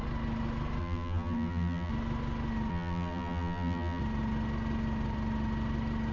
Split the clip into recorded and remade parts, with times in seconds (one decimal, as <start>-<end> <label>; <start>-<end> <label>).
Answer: 0.0-0.8 recorded; 0.8-1.9 remade; 1.9-2.7 recorded; 2.7-4.0 remade; 4.0-6.1 recorded